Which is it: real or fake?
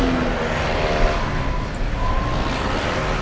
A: real